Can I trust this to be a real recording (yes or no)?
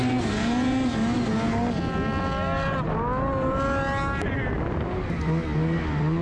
yes